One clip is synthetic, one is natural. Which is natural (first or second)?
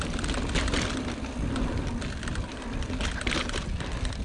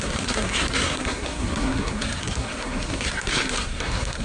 first